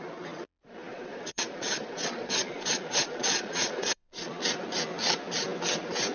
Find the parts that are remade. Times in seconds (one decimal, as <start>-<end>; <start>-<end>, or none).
0.9-4.4